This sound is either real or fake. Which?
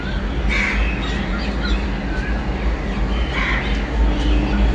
real